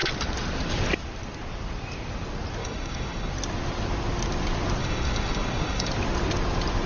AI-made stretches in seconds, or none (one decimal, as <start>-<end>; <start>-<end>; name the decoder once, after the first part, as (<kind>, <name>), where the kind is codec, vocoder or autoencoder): 2.6-3.3 (codec, DAC); 4.8-5.9